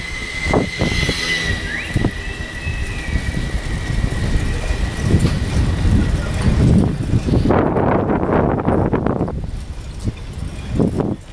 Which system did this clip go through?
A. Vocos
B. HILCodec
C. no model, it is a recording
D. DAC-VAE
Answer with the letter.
C